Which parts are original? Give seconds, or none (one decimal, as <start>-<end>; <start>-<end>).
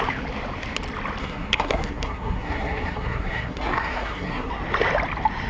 0.0-1.2; 4.5-5.5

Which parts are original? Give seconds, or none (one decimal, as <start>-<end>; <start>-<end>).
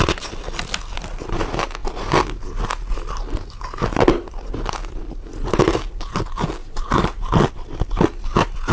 0.0-6.6; 7.5-8.7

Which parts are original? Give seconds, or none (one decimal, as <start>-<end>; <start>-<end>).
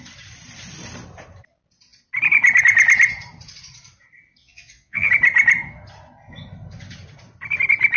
0.0-4.4; 5.1-8.0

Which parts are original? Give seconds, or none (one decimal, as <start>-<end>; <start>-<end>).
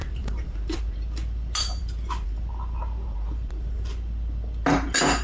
0.8-5.2